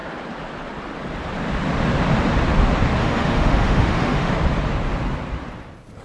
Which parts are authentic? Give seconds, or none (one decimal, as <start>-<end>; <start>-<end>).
0.0-3.0; 4.3-6.0